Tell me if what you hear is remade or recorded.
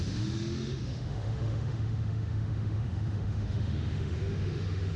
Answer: remade